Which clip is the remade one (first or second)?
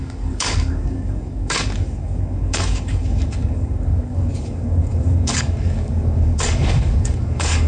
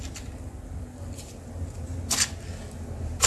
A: first